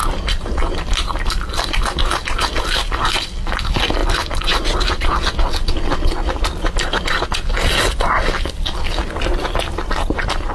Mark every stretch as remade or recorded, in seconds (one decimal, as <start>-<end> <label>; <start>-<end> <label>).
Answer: 0.0-10.5 recorded